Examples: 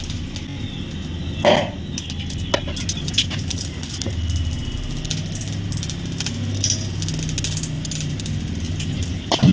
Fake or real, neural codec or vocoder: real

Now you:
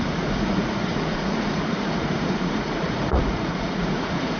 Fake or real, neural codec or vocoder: fake, vocoder, Vocos